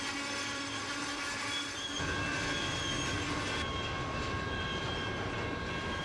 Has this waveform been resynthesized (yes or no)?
yes